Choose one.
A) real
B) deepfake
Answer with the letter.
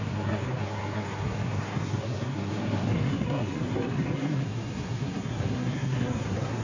B